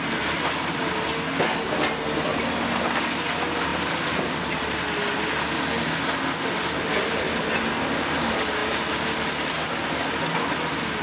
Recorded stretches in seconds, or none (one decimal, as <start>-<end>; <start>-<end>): 0.0-11.0